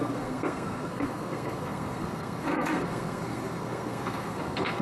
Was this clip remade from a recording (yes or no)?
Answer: yes